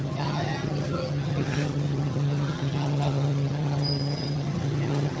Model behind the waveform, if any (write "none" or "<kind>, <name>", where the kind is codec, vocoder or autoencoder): vocoder, HiFi-GAN